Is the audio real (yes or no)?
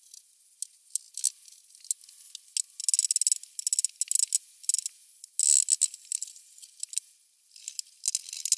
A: yes